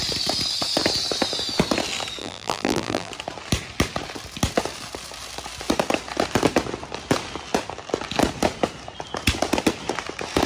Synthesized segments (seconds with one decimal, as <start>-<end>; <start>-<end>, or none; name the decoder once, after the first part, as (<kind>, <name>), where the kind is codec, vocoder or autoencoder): 2.2-3.1 (vocoder, BigVGAN v2)